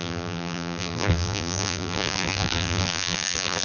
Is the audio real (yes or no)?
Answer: no